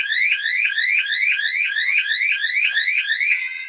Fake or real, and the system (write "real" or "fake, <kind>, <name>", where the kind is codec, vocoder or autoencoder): fake, vocoder, HiFi-GAN